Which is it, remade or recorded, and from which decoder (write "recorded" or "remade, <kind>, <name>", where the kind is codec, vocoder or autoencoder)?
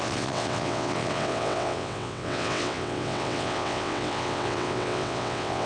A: remade, vocoder, WaveNeXt